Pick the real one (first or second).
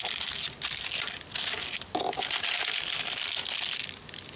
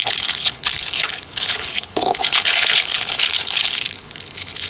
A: first